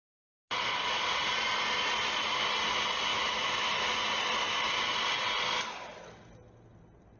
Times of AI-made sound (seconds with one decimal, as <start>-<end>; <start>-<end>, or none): 3.1-3.7